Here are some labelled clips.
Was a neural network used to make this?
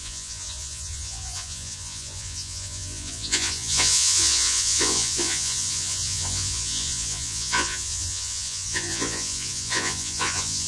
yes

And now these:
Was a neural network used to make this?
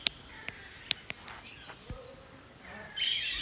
no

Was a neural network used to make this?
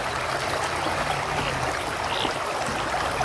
no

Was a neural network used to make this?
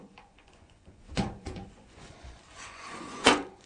yes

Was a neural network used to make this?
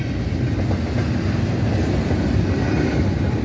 no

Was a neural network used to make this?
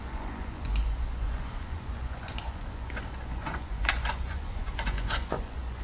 yes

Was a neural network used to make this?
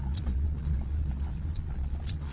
yes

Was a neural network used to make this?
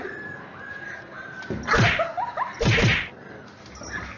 no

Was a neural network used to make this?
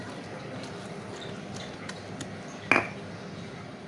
no